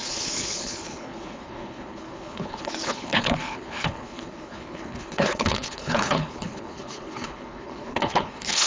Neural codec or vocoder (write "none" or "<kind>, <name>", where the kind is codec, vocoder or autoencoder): codec, HILCodec